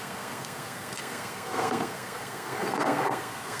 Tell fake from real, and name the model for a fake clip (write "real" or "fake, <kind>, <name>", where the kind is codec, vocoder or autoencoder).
fake, codec, SNAC